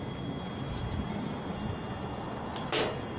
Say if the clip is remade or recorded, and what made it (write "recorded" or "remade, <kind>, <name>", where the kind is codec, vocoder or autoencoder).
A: recorded